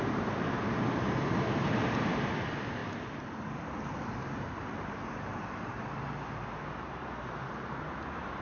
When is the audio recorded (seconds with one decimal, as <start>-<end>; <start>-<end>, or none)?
2.8-4.1